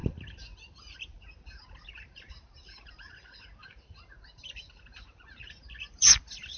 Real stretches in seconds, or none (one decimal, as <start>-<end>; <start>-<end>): 3.1-3.6